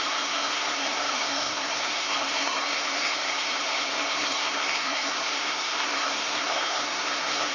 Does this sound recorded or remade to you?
remade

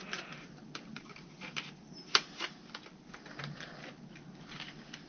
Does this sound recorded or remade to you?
recorded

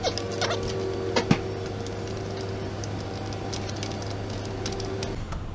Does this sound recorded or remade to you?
recorded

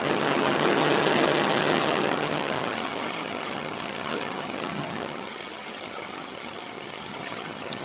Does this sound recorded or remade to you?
remade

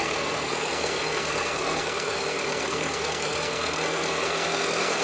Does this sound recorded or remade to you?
remade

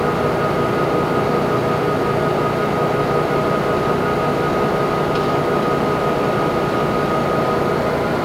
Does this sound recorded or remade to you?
recorded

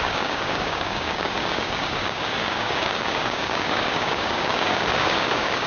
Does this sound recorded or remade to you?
remade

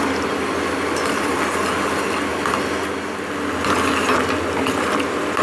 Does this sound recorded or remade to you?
recorded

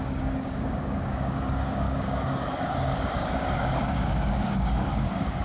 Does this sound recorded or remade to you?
remade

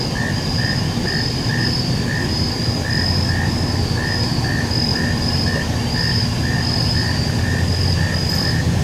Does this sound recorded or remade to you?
recorded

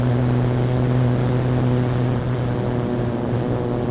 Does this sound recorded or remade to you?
recorded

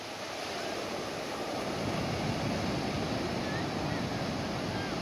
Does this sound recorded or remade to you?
recorded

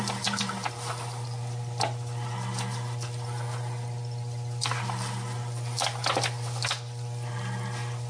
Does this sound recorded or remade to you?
recorded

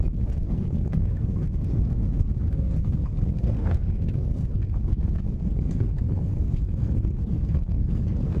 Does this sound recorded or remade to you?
remade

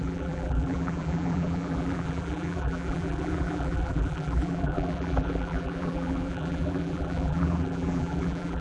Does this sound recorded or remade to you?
remade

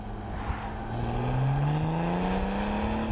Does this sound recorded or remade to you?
recorded